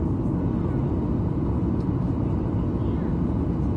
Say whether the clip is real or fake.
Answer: real